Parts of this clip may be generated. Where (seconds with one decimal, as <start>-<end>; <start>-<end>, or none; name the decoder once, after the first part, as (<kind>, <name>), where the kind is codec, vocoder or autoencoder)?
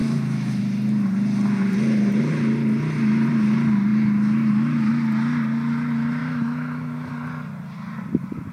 0.0-0.6 (autoencoder, DAC-VAE); 6.2-7.1